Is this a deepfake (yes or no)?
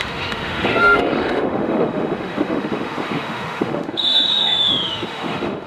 yes